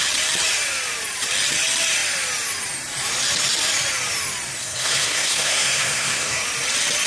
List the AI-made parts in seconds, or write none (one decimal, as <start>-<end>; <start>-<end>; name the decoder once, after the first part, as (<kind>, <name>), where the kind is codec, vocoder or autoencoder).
4.6-6.4 (codec, SNAC)